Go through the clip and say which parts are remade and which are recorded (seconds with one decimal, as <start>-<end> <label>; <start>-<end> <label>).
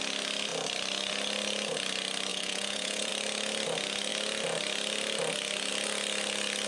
0.0-2.3 recorded; 2.3-3.1 remade; 3.1-6.7 recorded